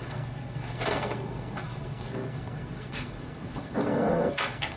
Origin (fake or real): fake